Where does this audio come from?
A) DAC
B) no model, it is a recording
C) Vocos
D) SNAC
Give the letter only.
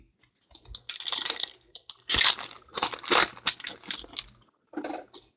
B